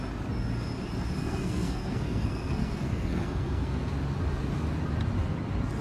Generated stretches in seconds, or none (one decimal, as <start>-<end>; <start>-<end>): 1.2-3.9